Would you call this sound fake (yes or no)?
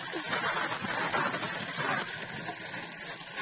no